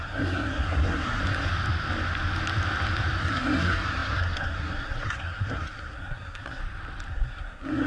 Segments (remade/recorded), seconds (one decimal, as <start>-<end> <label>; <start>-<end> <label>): 0.0-1.2 remade; 1.2-3.2 recorded; 3.2-6.6 remade; 6.6-7.1 recorded; 7.1-7.9 remade